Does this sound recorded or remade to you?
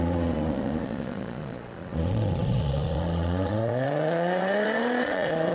remade